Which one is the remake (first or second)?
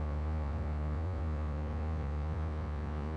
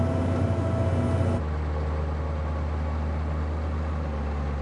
first